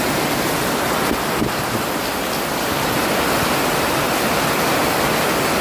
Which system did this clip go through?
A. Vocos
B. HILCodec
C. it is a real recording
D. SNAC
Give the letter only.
C